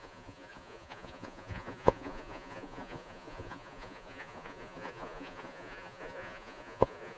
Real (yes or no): no